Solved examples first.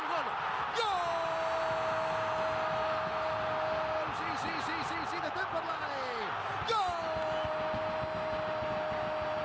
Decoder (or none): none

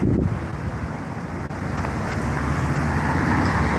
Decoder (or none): none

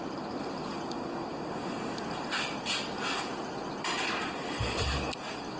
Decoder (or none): none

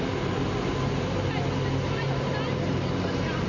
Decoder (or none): none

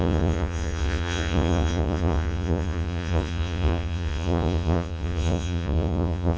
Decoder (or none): vocoder, Vocos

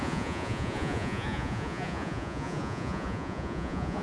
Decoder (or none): vocoder, Vocos